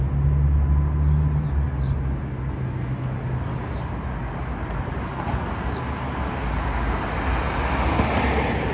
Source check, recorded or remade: recorded